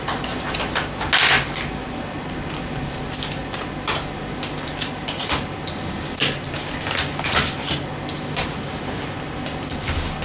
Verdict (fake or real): real